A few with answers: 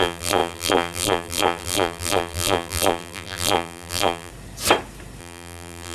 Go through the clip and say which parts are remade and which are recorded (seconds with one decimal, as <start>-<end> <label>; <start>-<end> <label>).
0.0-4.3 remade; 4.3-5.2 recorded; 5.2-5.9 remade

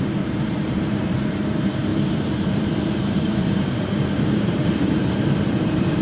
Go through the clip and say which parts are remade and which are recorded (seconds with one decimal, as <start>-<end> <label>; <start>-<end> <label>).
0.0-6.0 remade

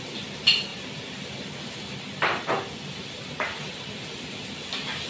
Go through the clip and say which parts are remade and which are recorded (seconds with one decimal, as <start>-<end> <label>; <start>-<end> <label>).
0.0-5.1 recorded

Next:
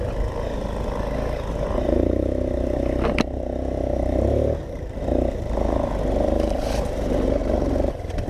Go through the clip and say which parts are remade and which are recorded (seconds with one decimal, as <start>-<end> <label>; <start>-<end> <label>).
0.0-7.4 remade; 7.4-7.9 recorded; 7.9-8.3 remade

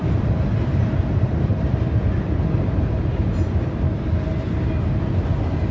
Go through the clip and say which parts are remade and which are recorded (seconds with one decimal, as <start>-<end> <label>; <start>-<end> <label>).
0.0-1.3 recorded; 1.3-1.8 remade; 1.8-5.7 recorded

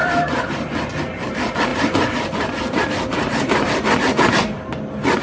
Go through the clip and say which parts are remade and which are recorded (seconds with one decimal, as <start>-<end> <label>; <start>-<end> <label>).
0.0-0.5 remade; 0.5-1.7 recorded; 1.7-4.8 remade; 4.8-5.2 recorded

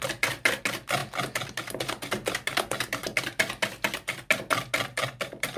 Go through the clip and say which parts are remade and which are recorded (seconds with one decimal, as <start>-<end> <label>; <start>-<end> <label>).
0.0-5.6 recorded

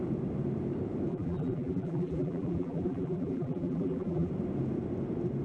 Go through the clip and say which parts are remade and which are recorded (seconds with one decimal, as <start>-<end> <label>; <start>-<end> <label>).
0.0-1.1 recorded; 1.1-4.3 remade; 4.3-5.4 recorded